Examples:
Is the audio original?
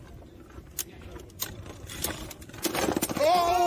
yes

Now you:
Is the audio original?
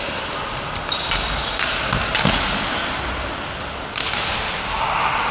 yes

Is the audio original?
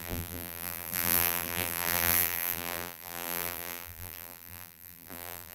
no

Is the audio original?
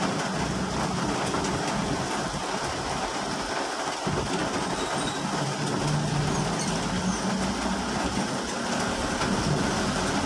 yes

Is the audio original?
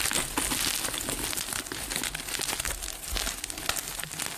yes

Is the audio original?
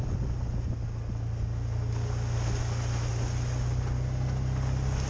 yes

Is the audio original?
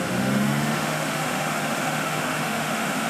no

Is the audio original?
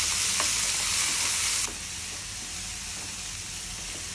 yes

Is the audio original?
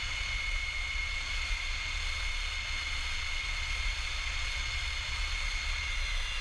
no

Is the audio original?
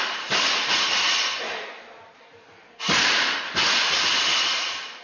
yes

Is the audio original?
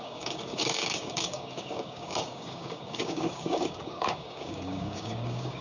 no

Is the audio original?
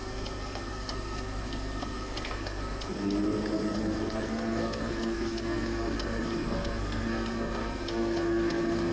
no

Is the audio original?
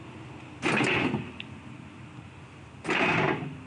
yes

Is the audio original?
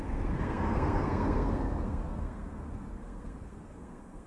no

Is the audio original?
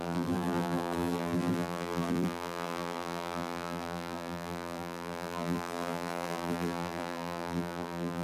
no